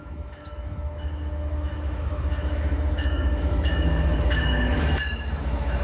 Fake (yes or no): yes